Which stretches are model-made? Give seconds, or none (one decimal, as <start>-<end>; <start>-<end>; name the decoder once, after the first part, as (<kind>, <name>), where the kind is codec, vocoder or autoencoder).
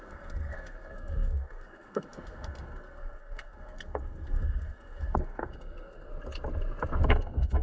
0.0-6.1 (codec, SNAC); 7.1-7.6